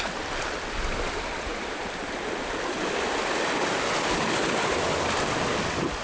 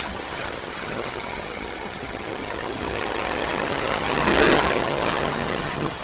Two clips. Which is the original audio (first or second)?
first